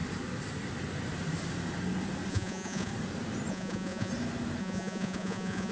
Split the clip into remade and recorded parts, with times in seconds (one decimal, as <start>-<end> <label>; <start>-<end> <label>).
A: 0.0-2.3 recorded; 2.3-2.9 remade; 2.9-3.5 recorded; 3.5-4.1 remade; 4.1-4.6 recorded; 4.6-5.7 remade

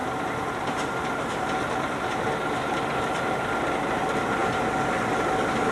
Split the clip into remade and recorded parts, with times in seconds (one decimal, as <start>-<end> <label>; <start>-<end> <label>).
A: 0.0-3.4 remade; 3.4-5.7 recorded